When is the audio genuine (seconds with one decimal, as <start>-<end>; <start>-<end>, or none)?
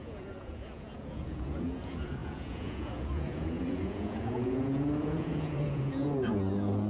none